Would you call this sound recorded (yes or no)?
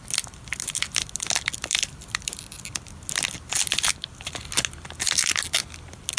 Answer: yes